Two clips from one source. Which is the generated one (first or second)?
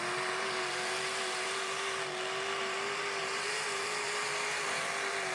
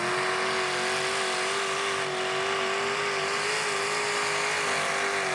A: first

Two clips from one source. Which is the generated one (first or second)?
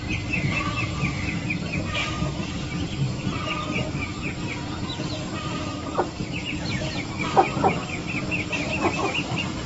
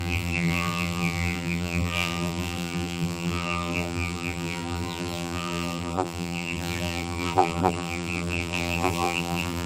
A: second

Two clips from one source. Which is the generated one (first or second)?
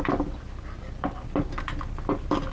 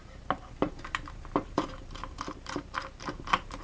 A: second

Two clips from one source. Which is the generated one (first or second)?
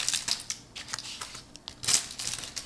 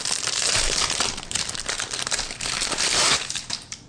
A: second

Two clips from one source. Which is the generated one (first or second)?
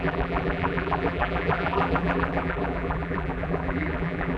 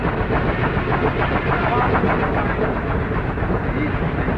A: first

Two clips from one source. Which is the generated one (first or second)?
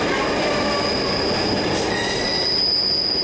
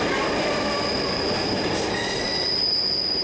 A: second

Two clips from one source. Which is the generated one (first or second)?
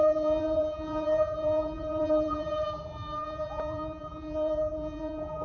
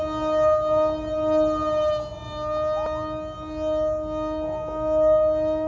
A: first